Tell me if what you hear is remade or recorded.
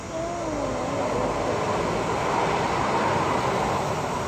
recorded